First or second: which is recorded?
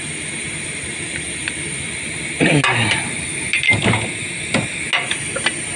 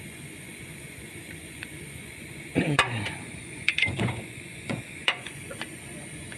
first